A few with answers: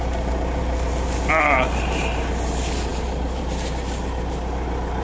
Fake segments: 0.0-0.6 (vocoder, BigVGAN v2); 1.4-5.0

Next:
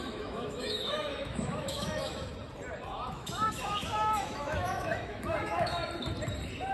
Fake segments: 0.0-2.3 (autoencoder, DAC-VAE); 3.1-5.8